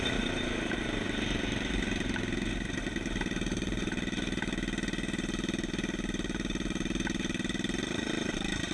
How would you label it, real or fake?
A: fake